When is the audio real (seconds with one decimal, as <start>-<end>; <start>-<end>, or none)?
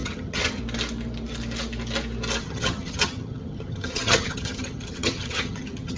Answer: 0.6-2.4